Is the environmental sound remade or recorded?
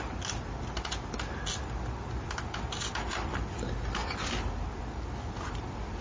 recorded